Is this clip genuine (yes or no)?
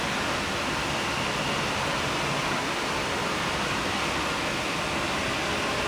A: yes